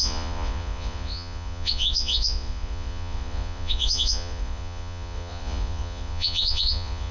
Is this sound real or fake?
fake